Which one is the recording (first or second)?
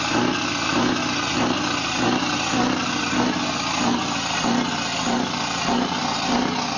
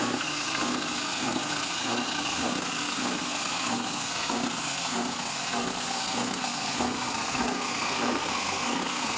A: first